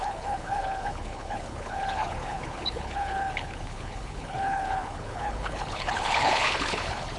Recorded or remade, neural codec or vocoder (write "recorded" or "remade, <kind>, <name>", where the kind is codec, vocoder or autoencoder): remade, codec, HILCodec